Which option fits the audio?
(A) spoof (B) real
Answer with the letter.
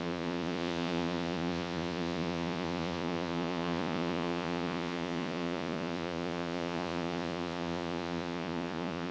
A